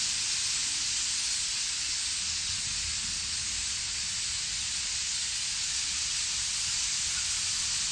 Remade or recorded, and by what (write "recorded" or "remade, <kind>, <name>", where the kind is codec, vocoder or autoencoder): recorded